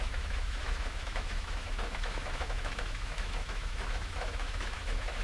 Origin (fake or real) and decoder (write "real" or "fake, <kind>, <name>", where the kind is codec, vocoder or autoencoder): fake, autoencoder, DAC-VAE